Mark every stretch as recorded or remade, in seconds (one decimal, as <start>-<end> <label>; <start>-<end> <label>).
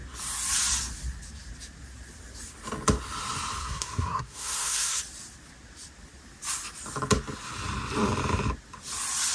0.0-3.6 recorded; 3.6-5.0 remade; 5.0-9.3 recorded